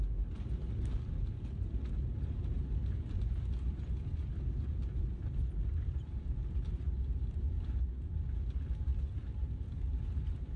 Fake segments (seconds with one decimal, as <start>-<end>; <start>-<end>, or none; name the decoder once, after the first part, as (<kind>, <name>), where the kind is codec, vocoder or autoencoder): 8.9-9.4 (vocoder, BigVGAN v2)